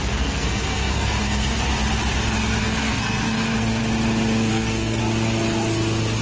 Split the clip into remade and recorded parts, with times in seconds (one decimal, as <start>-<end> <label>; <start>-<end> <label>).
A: 0.0-1.7 remade; 1.7-2.6 recorded; 2.6-3.8 remade; 3.8-4.5 recorded; 4.5-5.0 remade; 5.0-6.2 recorded